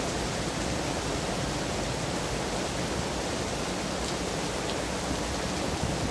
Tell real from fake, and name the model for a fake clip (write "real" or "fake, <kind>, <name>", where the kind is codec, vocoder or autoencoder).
real